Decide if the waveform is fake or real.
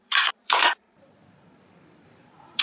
fake